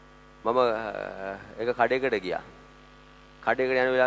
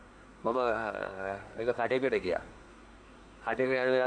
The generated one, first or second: second